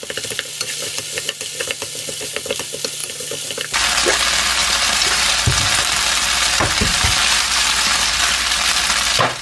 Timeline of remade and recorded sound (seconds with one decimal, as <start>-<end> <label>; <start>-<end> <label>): 0.0-4.6 recorded; 4.6-5.3 remade; 5.3-6.9 recorded; 6.9-8.2 remade; 8.2-9.4 recorded